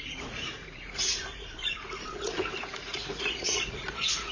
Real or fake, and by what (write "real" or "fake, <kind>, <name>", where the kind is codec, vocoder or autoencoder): fake, vocoder, Vocos